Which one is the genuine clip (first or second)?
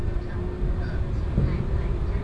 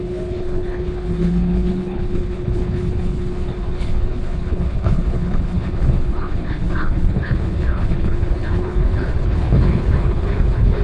first